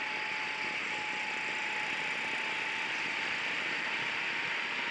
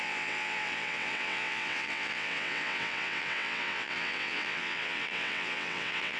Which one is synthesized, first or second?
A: second